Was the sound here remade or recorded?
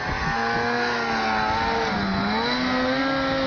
recorded